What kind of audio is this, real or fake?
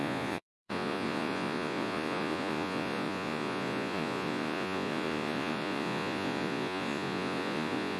fake